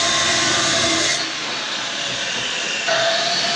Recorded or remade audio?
recorded